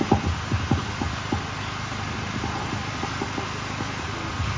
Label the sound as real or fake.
real